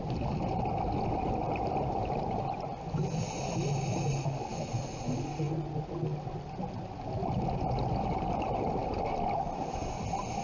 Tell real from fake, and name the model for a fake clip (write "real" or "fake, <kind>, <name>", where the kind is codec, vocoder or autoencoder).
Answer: real